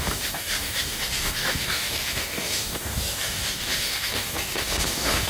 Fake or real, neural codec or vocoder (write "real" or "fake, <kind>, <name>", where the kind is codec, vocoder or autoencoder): fake, codec, DAC